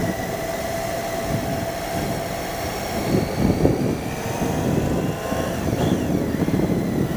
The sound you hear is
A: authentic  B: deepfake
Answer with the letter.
A